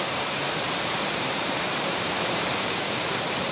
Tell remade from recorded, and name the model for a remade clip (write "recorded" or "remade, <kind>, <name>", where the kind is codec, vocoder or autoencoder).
remade, vocoder, BigVGAN v2